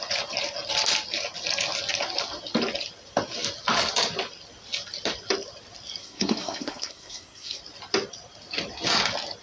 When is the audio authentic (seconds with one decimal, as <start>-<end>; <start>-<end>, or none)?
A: 0.0-6.0; 7.6-9.4